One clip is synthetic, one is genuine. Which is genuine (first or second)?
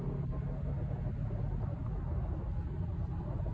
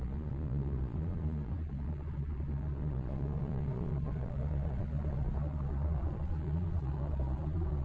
first